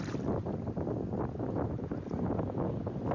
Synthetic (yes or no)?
no